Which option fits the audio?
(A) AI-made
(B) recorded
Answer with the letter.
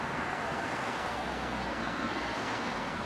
A